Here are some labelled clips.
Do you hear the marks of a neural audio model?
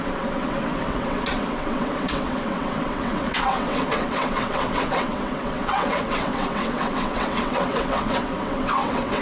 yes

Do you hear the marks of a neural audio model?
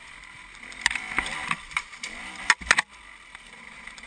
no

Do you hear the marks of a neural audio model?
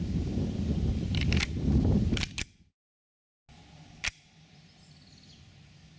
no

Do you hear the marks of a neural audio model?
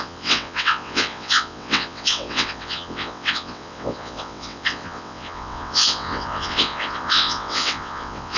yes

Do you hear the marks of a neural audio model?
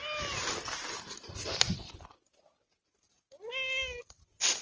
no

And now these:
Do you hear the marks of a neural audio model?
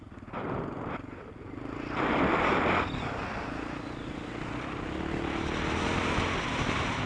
no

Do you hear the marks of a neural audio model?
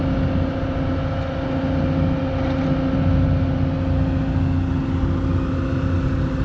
no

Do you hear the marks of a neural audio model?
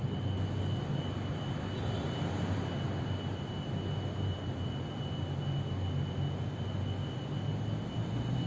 no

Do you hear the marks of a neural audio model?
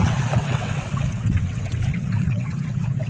yes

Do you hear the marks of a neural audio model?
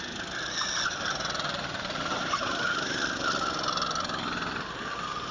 no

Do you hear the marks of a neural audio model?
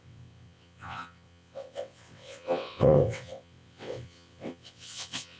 yes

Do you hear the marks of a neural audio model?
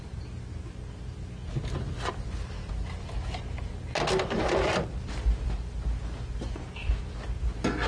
no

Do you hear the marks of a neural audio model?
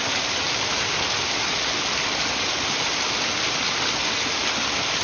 no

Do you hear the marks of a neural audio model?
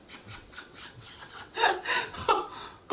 yes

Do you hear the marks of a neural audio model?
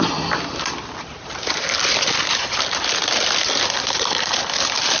no